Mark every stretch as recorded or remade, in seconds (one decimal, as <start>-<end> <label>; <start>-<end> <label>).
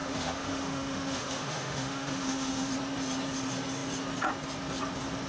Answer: 0.0-2.7 remade; 2.7-5.3 recorded